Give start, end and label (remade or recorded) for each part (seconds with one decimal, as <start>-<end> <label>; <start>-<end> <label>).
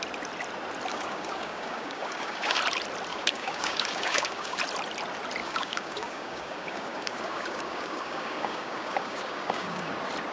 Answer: 0.0-0.9 recorded; 0.9-2.6 remade; 2.6-3.1 recorded; 3.1-4.6 remade; 4.6-5.4 recorded; 5.4-9.9 remade; 9.9-10.3 recorded